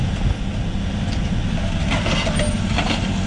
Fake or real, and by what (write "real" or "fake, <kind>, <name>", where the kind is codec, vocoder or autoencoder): real